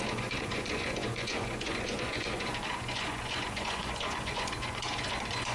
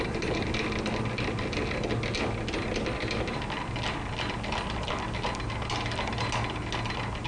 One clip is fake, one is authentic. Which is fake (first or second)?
first